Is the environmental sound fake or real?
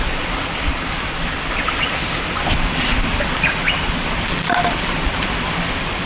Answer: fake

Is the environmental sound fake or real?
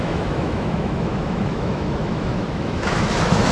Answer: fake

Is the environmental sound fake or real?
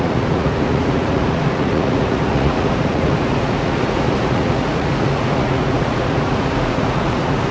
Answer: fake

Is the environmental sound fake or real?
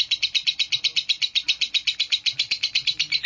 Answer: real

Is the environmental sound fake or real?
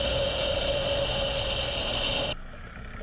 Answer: real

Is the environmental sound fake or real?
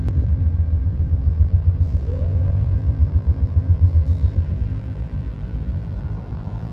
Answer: fake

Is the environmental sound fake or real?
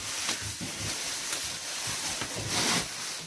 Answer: real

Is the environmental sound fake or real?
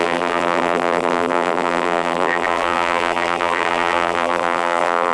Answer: fake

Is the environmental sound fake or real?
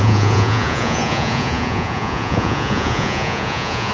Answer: fake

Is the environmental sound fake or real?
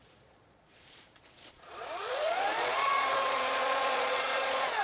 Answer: fake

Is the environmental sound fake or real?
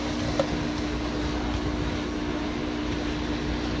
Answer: real